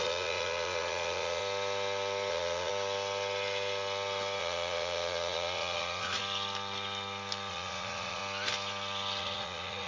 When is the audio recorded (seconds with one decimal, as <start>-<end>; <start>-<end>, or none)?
1.4-2.3; 2.7-4.4; 6.2-7.5; 8.2-9.2